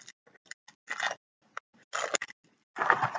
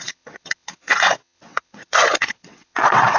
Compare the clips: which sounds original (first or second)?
first